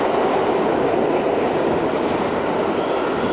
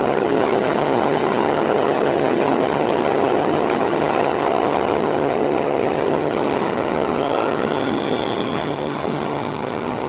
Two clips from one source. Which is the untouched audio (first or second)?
first